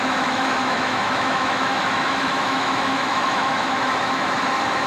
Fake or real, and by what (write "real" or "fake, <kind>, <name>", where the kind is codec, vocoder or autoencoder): fake, autoencoder, DAC-VAE